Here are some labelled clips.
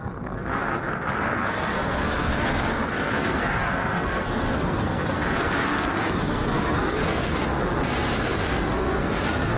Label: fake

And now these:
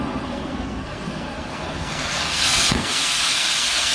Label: fake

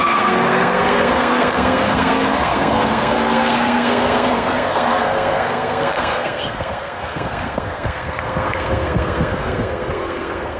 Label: fake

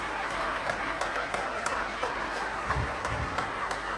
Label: fake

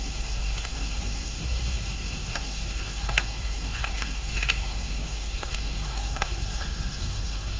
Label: fake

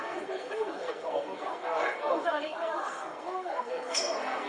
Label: fake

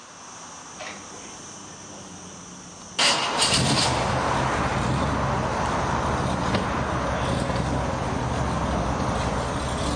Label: real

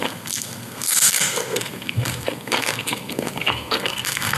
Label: fake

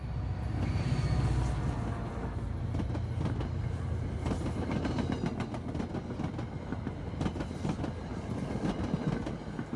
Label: real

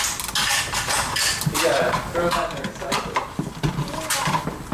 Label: real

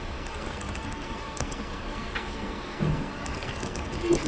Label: fake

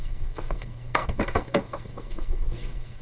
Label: fake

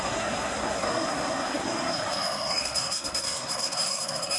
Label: fake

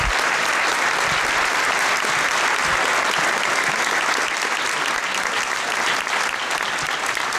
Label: real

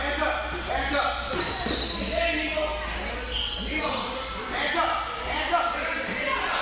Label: real